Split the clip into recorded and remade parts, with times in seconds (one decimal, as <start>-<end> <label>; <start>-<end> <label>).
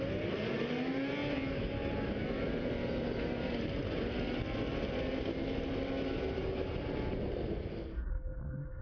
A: 0.0-8.1 recorded; 8.1-8.8 remade